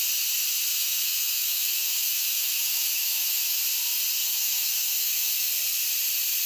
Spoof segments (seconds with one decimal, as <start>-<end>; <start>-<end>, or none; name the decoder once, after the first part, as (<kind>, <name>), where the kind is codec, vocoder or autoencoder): 0.7-3.6 (autoencoder, DAC-VAE); 4.2-5.5